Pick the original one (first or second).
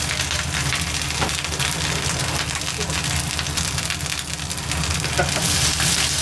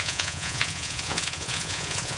first